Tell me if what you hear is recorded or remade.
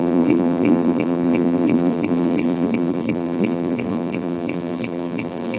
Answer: remade